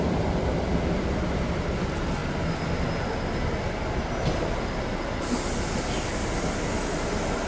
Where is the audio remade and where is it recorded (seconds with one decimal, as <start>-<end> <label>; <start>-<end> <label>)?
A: 0.0-7.5 recorded